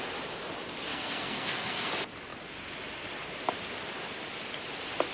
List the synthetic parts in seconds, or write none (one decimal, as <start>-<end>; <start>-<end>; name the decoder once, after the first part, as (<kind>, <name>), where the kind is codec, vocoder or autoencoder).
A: 0.9-1.9 (codec, SNAC)